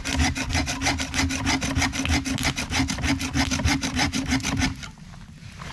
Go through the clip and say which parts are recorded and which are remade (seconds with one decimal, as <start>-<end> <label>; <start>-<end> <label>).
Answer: 0.0-3.7 recorded; 3.7-4.4 remade; 4.4-5.7 recorded